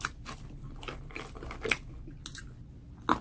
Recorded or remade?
recorded